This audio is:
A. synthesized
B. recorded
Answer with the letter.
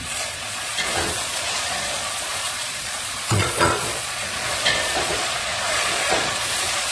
A